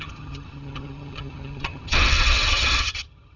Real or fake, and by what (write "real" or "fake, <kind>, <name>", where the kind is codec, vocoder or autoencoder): fake, vocoder, HiFi-GAN